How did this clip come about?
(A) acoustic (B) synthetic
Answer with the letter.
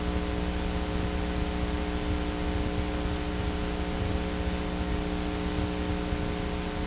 A